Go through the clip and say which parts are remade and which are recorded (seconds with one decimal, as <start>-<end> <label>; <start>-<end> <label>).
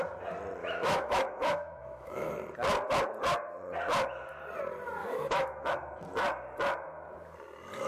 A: 0.0-0.6 recorded; 0.6-2.3 remade; 2.3-5.0 recorded; 5.0-5.7 remade; 5.7-7.9 recorded